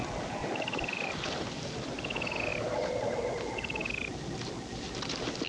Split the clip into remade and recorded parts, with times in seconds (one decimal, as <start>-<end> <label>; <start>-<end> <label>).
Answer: 0.0-0.4 recorded; 0.4-1.1 remade; 1.1-5.5 recorded